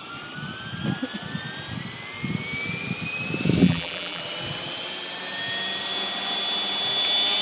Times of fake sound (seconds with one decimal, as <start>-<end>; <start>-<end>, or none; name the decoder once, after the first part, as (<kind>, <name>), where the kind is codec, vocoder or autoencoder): 3.6-4.2 (vocoder, BigVGAN v2)